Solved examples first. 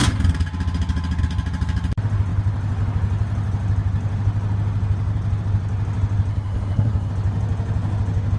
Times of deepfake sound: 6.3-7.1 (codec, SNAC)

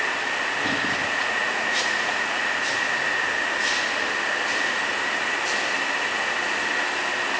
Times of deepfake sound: 1.0-2.6 (vocoder, Vocos)